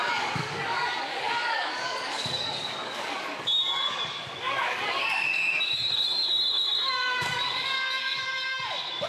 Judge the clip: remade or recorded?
remade